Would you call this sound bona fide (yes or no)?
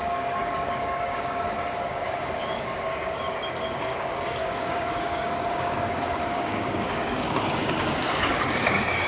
no